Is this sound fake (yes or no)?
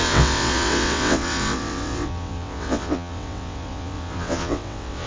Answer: yes